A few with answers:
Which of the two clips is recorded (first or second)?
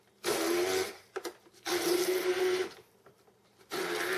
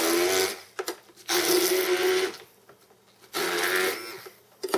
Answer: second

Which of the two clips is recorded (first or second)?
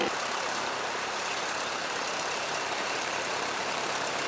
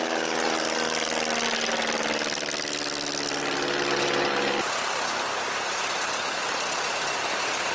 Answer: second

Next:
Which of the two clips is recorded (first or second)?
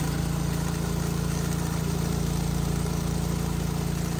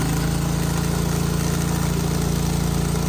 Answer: second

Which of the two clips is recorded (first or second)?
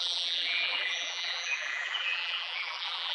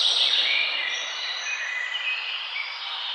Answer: second